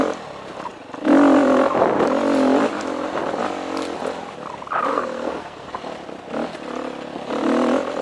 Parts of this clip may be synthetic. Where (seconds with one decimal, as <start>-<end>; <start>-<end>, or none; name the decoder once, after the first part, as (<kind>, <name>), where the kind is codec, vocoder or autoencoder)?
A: 4.9-5.7 (codec, SNAC)